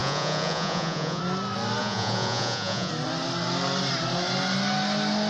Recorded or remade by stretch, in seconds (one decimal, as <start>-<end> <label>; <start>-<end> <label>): 0.0-1.2 remade; 1.2-1.8 recorded; 1.8-2.9 remade; 2.9-5.3 recorded